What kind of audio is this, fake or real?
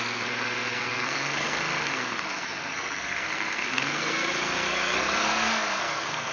fake